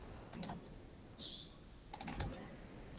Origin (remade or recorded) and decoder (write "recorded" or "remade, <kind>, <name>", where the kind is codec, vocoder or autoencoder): recorded